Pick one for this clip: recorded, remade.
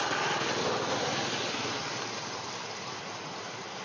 recorded